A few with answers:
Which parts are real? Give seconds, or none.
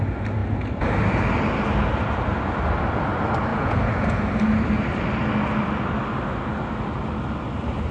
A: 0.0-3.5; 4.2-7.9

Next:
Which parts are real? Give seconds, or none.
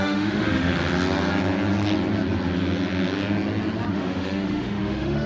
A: 0.7-3.9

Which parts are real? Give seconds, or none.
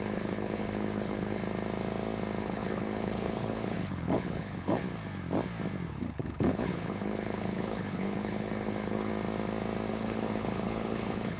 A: 1.4-2.4; 4.8-5.9; 9.1-9.9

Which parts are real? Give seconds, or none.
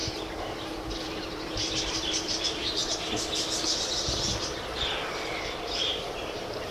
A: 2.8-5.7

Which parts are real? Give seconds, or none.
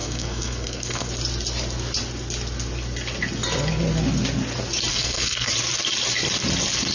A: 1.1-4.9; 5.5-6.9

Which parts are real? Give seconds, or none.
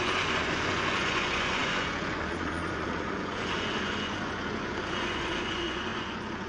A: none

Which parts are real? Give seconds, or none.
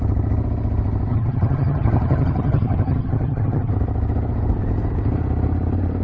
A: 0.0-1.1; 3.7-6.0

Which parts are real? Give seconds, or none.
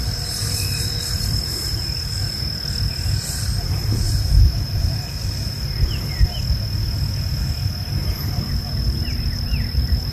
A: 2.2-3.3; 5.4-7.9